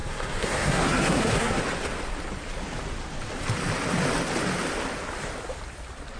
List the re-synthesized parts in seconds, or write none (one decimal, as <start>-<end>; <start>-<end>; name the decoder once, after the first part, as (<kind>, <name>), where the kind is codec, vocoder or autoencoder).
0.0-1.6 (codec, SNAC)